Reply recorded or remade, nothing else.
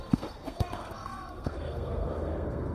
remade